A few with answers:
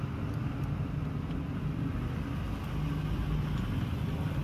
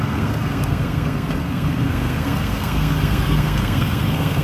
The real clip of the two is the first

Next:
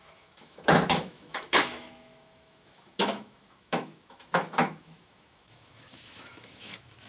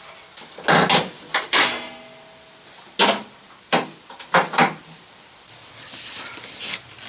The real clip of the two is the second